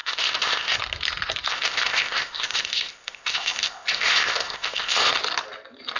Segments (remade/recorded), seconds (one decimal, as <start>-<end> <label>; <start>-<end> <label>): 0.0-0.8 remade; 0.8-1.5 recorded; 1.5-5.1 remade; 5.1-6.0 recorded